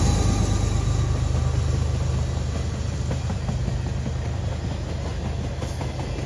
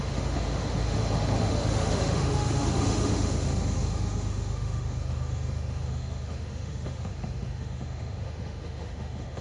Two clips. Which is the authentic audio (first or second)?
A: first